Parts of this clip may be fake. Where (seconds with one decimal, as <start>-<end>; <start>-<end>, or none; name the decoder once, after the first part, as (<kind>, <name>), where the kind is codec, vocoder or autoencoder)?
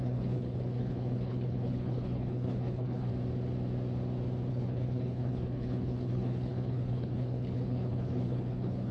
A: 0.0-3.1 (codec, HILCodec); 4.5-8.9